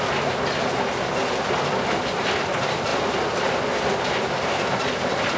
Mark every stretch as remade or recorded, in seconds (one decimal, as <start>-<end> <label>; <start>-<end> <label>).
0.0-5.4 recorded